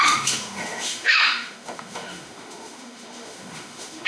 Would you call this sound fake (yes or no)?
yes